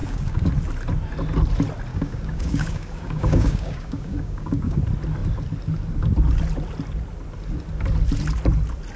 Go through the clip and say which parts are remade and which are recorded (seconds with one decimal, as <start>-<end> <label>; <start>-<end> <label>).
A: 0.0-0.5 remade; 0.5-1.9 recorded; 1.9-4.8 remade; 4.8-9.0 recorded